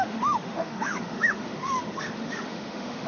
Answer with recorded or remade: remade